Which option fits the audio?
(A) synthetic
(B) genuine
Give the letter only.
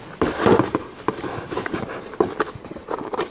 B